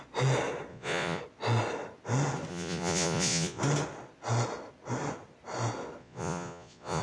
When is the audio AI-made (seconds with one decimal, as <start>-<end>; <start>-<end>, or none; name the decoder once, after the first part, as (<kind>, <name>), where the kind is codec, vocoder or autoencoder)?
0.7-1.2 (vocoder, Vocos); 2.5-3.6; 6.0-7.0